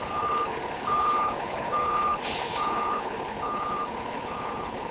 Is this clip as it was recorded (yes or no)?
no